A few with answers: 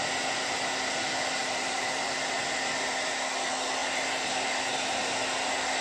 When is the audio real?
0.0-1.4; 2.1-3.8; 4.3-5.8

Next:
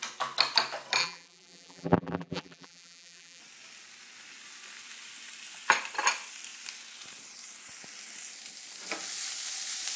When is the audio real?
0.0-1.0; 3.4-10.0

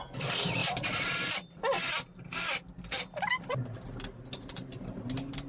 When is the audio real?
0.0-0.6; 1.6-5.5

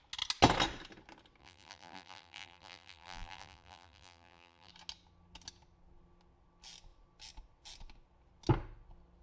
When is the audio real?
0.0-1.4; 4.7-9.2

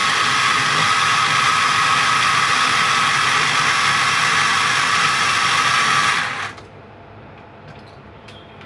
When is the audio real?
1.9-5.7

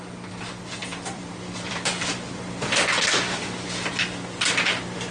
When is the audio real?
0.0-0.8; 3.9-5.1

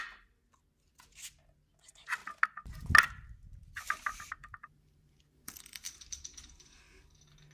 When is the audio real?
0.0-4.4; 6.8-7.5